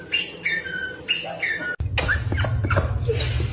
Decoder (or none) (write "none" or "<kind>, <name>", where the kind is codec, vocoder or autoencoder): none